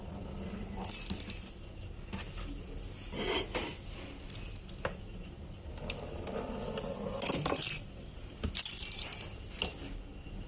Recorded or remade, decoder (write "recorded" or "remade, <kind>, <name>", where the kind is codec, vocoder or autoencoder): recorded